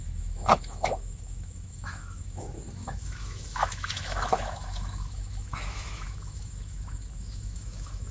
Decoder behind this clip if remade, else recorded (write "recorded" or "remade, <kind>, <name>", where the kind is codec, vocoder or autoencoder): remade, autoencoder, DAC-VAE